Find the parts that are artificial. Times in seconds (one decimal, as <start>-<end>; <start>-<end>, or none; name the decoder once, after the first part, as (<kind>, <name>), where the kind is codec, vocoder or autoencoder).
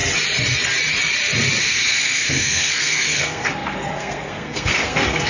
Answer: 1.6-5.3 (codec, SNAC)